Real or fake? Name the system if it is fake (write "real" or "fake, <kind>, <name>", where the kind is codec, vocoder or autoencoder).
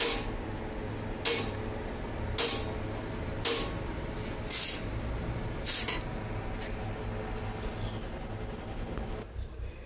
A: real